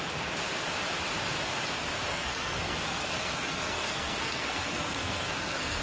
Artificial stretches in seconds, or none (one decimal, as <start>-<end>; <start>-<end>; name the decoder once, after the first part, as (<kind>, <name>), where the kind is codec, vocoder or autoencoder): 2.1-5.8 (codec, SNAC)